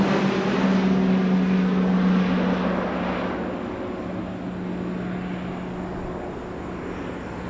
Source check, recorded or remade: recorded